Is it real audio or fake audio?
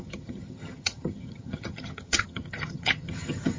fake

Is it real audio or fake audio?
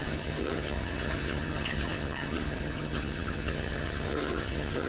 fake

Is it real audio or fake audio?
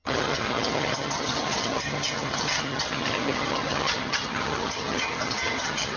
fake